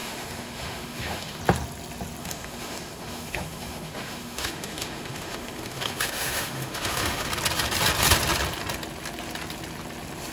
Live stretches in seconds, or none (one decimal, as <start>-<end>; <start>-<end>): 1.4-2.2; 7.3-10.3